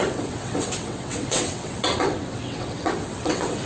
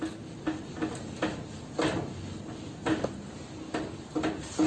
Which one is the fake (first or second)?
first